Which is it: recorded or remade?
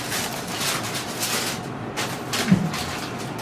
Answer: recorded